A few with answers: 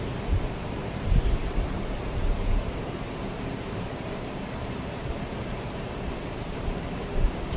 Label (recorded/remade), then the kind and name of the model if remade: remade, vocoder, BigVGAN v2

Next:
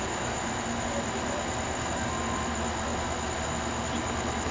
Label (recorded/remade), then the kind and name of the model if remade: recorded